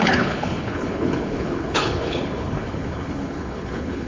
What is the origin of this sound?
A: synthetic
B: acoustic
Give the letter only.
A